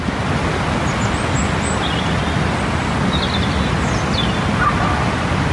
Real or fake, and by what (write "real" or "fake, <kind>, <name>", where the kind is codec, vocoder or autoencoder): real